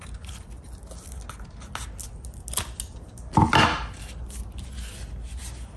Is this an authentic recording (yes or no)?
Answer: yes